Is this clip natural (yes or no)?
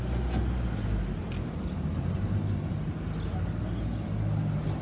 yes